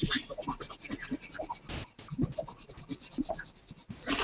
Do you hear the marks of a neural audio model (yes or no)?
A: no